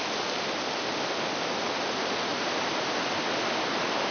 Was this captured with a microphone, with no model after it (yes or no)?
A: yes